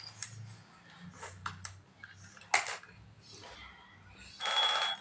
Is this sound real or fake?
real